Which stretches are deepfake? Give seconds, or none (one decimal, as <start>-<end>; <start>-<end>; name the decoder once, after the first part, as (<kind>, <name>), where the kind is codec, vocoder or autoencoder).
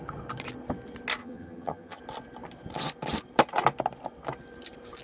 1.2-2.0 (vocoder, HiFi-GAN)